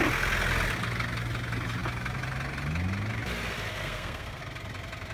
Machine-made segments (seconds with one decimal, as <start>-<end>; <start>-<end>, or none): 3.7-4.4